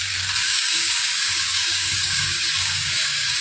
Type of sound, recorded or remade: remade